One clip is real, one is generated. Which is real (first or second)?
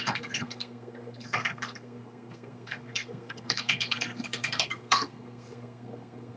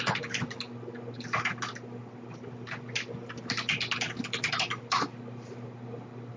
second